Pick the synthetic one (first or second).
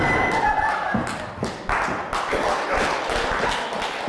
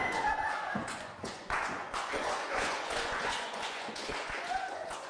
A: second